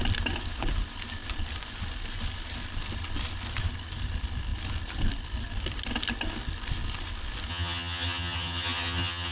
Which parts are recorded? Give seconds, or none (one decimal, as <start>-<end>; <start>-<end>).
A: 0.0-7.5